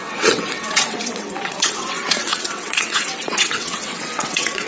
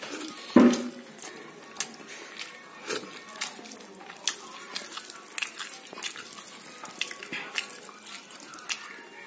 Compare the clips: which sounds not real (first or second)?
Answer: first